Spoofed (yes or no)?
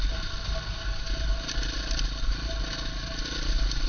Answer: no